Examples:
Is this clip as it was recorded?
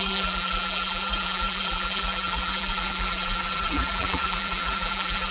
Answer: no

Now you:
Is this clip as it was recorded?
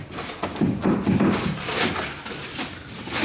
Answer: yes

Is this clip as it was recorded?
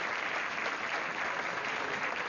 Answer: yes